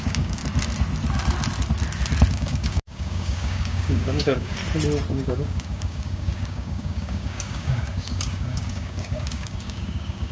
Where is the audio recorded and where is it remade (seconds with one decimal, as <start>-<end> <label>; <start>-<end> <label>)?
0.0-0.4 remade; 0.4-2.3 recorded; 2.3-4.6 remade; 4.6-5.1 recorded; 5.1-10.3 remade